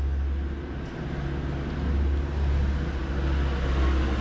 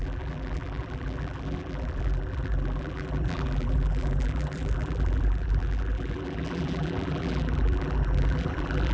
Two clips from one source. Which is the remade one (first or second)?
second